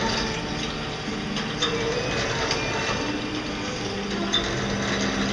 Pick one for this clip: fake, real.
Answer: real